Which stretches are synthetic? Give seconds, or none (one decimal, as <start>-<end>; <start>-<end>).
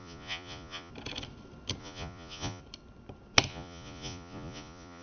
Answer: 0.0-0.9; 1.8-2.6; 3.5-5.0